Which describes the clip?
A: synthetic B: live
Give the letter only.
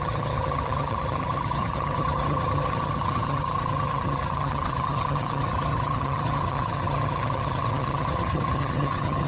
A